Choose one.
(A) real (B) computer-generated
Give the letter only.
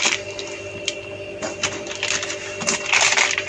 A